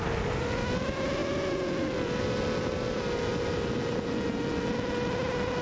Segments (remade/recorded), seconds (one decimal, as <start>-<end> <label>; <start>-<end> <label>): 0.0-5.6 recorded